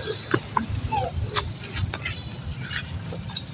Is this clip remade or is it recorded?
recorded